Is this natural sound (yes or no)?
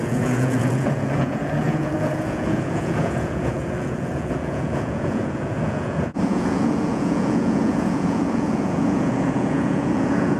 no